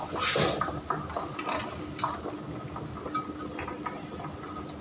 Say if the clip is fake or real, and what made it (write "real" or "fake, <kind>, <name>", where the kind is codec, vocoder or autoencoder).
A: real